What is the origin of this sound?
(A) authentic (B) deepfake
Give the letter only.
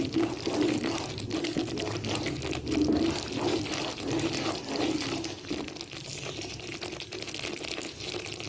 B